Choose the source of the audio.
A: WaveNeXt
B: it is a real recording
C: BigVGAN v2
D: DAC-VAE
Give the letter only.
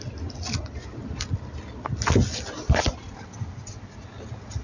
B